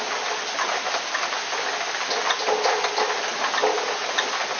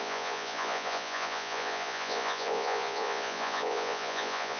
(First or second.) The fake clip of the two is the second